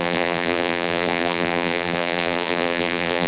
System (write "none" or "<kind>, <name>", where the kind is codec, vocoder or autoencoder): vocoder, BigVGAN v2